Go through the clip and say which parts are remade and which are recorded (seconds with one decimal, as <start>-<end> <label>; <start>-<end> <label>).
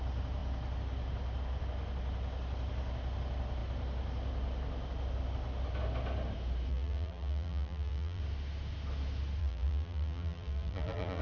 0.0-6.7 recorded; 6.7-8.2 remade; 8.2-9.4 recorded; 9.4-11.2 remade